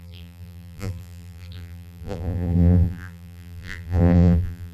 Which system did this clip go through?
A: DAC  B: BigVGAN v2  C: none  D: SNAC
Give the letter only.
B